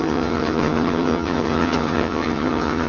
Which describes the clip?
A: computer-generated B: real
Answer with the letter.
A